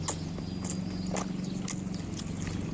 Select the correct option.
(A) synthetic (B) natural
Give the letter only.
B